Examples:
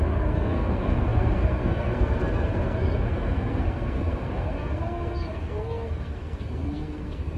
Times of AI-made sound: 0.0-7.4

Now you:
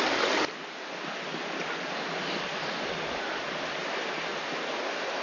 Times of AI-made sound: none

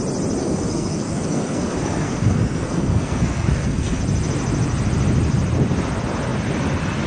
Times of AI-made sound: 0.4-4.0

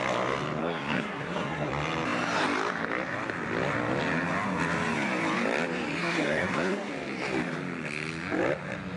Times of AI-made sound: 0.6-1.7; 6.0-6.9

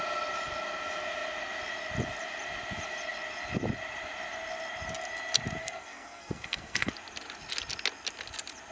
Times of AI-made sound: 5.6-6.9

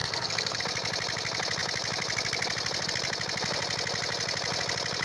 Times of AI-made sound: 0.0-0.6